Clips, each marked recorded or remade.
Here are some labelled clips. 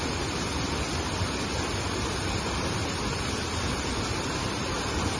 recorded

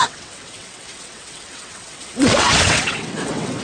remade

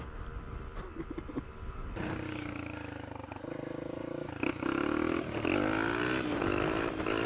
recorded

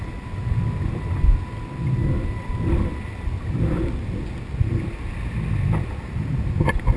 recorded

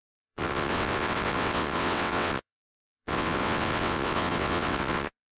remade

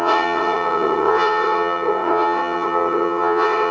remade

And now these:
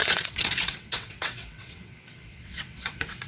remade